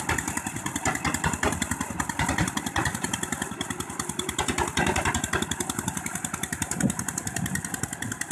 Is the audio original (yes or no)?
yes